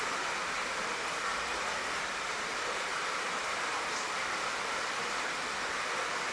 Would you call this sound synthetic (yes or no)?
no